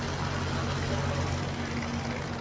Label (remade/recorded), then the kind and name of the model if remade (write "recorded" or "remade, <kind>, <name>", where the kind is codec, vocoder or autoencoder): recorded